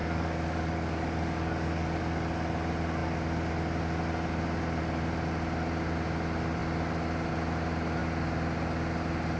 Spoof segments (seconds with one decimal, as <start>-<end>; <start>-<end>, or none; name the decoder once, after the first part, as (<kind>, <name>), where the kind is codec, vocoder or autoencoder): 0.0-2.0 (codec, DAC)